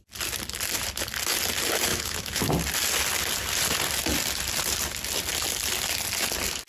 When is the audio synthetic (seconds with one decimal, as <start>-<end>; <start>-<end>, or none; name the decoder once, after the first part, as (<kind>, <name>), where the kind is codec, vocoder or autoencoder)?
1.9-2.5 (autoencoder, DAC-VAE)